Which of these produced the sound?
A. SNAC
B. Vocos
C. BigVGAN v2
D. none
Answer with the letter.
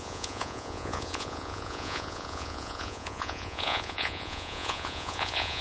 B